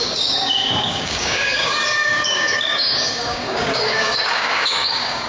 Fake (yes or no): yes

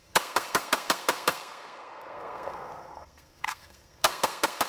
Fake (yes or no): yes